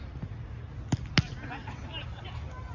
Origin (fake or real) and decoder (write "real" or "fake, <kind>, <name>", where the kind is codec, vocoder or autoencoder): real